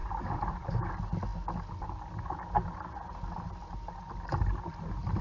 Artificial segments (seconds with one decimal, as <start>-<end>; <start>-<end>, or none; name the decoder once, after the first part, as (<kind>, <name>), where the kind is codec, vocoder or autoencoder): 0.0-0.9 (vocoder, BigVGAN v2)